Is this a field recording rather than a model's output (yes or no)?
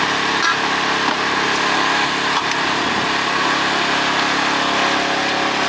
yes